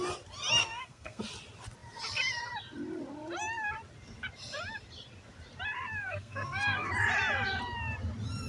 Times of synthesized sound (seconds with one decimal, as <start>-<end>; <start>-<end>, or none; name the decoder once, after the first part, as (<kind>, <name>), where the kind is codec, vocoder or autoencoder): 0.6-1.2 (codec, SNAC); 6.0-6.9